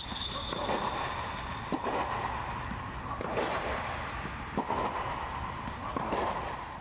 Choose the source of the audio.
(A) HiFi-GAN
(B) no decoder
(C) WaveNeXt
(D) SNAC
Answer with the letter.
B